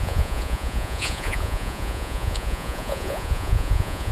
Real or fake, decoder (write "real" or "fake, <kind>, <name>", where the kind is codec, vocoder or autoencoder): fake, vocoder, Vocos